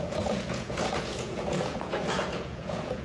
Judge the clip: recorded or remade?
remade